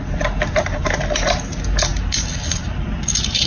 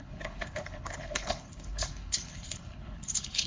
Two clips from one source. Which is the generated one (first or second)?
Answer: second